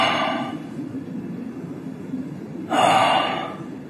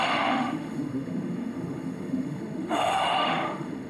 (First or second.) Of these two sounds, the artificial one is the second